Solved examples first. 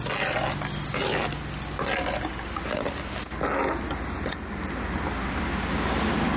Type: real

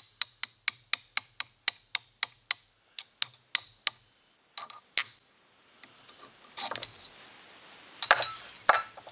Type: real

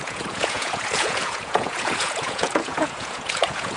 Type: fake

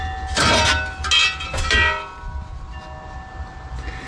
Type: real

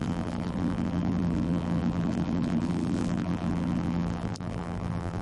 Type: fake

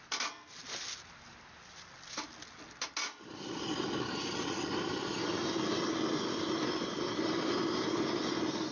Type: real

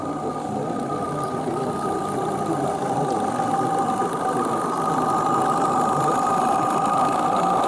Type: fake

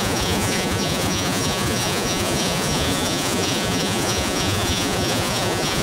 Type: fake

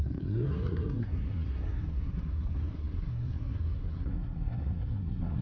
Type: fake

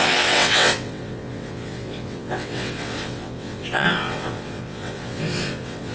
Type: fake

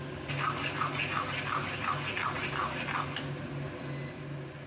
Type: real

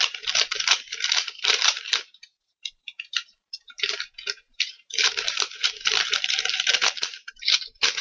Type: fake